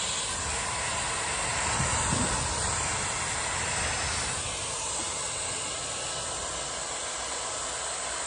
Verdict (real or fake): real